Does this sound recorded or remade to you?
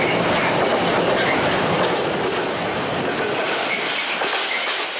recorded